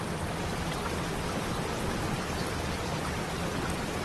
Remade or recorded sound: recorded